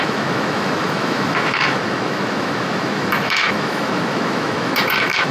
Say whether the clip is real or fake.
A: fake